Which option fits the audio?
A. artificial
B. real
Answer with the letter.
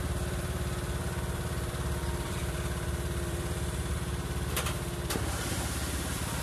A